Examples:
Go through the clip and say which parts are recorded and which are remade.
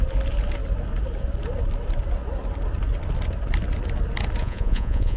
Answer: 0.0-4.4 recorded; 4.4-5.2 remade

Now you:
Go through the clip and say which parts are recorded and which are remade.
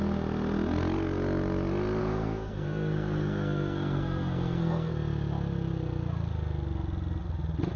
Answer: 0.0-2.0 recorded; 2.0-4.9 remade; 4.9-7.8 recorded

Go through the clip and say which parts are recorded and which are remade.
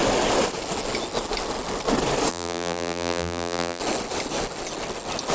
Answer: 0.0-2.3 recorded; 2.3-3.8 remade; 3.8-5.3 recorded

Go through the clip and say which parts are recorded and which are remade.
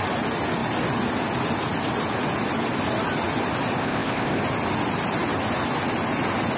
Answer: 0.0-3.8 recorded; 3.8-4.4 remade; 4.4-6.6 recorded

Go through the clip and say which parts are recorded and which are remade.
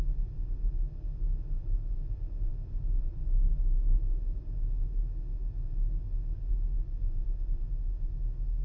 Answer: 0.0-8.6 recorded